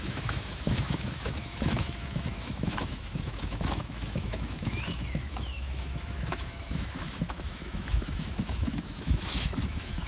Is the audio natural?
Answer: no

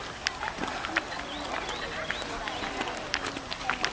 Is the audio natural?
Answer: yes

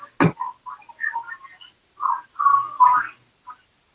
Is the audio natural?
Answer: yes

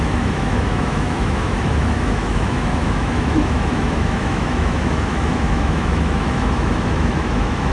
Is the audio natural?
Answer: no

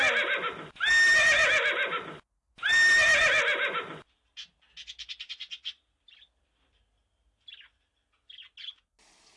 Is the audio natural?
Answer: yes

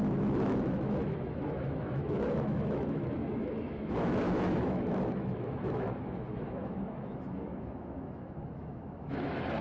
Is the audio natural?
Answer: no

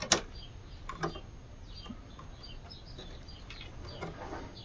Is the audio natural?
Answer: yes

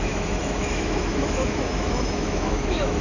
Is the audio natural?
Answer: no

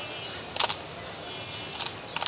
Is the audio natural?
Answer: yes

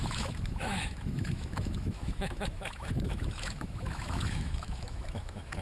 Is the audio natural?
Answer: no